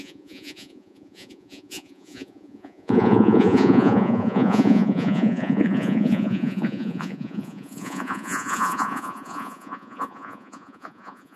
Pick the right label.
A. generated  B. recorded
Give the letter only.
A